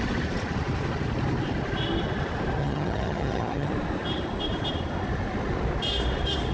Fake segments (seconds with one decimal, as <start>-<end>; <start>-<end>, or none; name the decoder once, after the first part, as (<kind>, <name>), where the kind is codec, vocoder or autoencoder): 2.6-3.7 (vocoder, HiFi-GAN)